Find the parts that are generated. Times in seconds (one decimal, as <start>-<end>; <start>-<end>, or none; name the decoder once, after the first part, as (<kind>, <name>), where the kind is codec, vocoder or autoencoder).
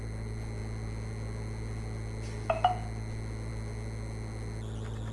none